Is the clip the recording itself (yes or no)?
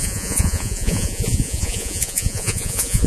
no